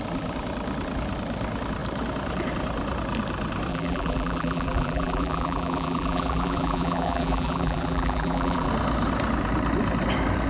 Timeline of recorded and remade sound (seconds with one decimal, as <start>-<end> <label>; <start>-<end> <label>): 0.0-3.7 recorded; 3.7-8.7 remade; 8.7-10.5 recorded